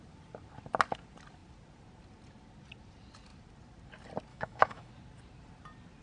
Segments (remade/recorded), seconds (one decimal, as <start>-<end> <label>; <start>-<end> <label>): 0.0-4.3 recorded; 4.3-4.9 remade; 4.9-6.0 recorded